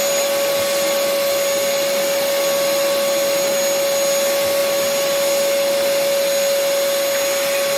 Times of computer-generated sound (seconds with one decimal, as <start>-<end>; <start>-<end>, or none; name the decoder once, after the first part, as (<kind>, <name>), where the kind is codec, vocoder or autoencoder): none